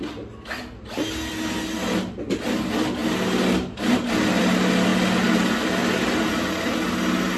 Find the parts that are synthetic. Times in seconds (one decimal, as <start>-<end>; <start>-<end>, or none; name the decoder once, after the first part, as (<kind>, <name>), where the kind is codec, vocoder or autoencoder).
none